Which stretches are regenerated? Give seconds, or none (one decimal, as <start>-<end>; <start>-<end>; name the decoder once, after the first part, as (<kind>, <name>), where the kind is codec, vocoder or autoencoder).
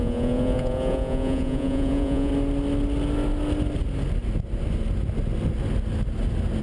0.0-2.3 (vocoder, Vocos)